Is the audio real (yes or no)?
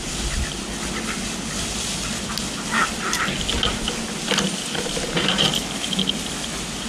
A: yes